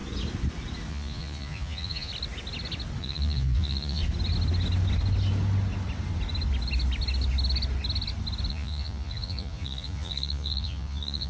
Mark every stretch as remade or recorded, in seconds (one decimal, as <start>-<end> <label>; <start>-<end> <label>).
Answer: 0.0-0.9 recorded; 0.9-2.1 remade; 2.1-3.0 recorded; 3.0-4.0 remade; 4.0-8.5 recorded; 8.5-11.3 remade